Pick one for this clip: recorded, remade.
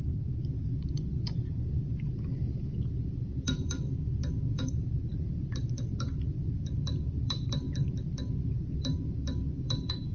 remade